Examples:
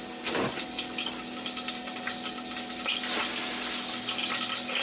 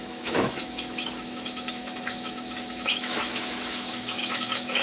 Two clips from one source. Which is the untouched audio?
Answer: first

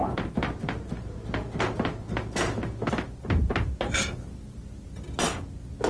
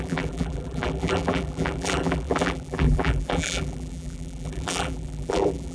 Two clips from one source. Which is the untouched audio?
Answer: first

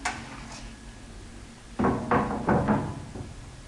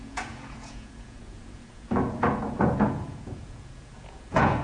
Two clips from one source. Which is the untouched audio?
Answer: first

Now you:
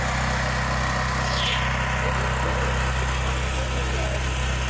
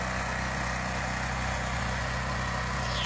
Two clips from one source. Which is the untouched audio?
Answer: first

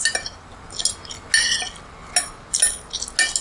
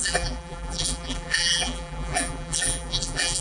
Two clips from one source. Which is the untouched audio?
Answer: first